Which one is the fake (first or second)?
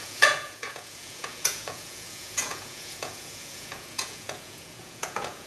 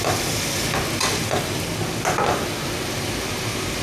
first